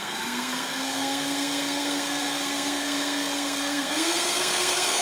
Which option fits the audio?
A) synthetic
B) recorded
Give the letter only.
A